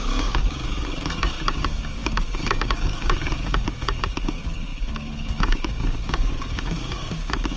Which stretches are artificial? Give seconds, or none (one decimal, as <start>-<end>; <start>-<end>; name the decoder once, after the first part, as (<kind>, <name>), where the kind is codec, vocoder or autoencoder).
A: 0.0-7.6 (codec, DAC)

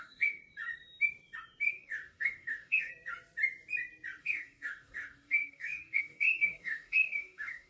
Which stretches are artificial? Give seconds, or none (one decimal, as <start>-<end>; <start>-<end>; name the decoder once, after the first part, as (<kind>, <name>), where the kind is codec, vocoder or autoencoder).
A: 0.0-0.4 (codec, DAC); 1.7-2.9; 4.2-7.7

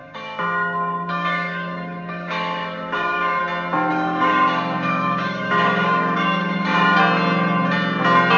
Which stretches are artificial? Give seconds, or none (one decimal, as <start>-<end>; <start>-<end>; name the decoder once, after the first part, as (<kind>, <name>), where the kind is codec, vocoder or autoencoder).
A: 0.0-3.4 (codec, DAC); 3.9-7.0

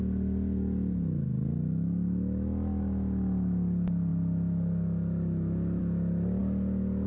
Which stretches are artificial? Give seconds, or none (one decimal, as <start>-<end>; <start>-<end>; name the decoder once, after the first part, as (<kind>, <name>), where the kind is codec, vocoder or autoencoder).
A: none

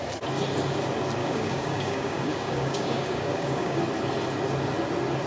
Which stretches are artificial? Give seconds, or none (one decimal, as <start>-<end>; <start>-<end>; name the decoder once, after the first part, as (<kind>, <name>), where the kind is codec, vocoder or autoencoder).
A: 1.2-3.8 (codec, DAC)

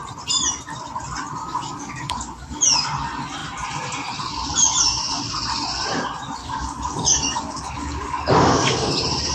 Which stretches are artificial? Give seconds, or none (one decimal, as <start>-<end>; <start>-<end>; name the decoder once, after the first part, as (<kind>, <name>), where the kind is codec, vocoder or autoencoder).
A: 1.4-2.6 (codec, DAC); 6.4-8.9

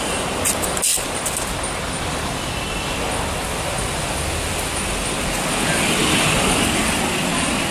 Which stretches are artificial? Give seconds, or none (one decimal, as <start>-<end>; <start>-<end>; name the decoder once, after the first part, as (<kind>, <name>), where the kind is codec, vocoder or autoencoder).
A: none

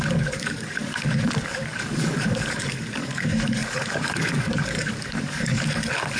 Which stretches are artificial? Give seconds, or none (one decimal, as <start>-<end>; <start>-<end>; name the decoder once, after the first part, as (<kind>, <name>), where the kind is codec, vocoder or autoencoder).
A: 0.0-6.2 (codec, DAC)